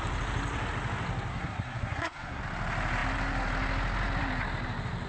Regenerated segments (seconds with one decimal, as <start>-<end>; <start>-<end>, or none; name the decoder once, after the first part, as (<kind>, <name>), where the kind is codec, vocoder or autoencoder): 1.3-2.4 (codec, SNAC)